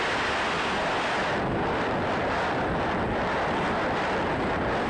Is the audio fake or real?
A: fake